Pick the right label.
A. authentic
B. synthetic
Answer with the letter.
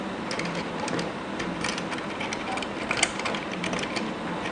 A